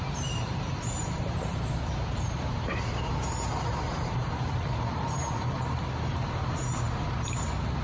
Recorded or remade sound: remade